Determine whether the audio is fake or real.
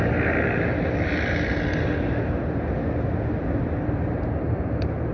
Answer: real